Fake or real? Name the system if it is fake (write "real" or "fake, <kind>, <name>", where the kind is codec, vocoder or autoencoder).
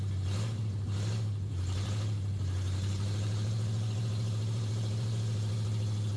fake, vocoder, BigVGAN v2